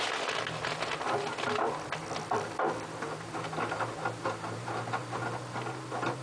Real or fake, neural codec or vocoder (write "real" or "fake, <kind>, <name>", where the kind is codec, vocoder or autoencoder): real